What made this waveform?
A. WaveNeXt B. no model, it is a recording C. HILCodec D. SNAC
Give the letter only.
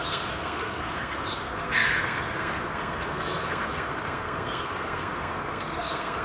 D